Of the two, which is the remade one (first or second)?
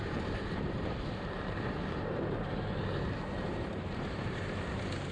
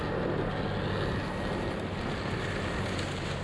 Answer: first